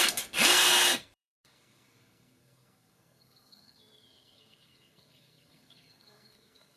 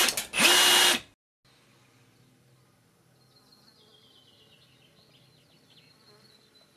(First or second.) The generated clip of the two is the first